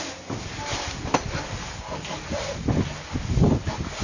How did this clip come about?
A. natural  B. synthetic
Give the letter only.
A